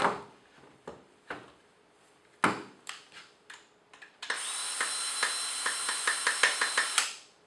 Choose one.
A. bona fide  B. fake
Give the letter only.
A